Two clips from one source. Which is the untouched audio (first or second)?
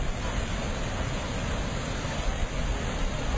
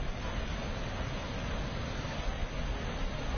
second